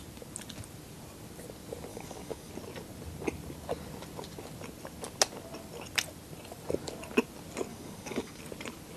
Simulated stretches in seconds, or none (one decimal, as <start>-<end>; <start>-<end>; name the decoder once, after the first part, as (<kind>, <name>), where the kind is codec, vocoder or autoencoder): 1.9-2.5 (codec, DAC); 7.7-8.4